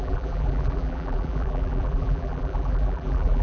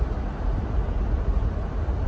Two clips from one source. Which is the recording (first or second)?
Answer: second